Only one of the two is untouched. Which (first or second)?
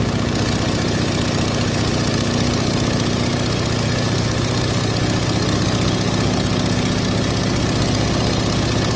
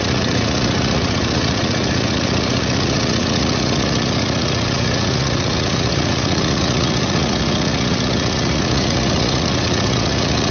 first